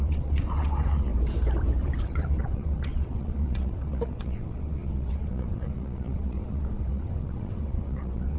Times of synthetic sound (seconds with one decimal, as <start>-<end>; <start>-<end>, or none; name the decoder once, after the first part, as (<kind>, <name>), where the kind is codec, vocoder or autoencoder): 0.0-1.1 (vocoder, WaveNeXt); 2.0-8.4